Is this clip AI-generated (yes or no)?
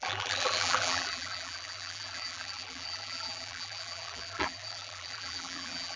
yes